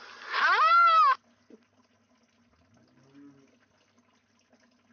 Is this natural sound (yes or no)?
yes